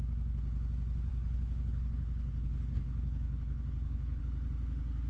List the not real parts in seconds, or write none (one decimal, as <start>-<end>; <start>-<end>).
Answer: 1.1-4.2